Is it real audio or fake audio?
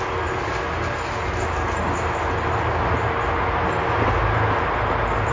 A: real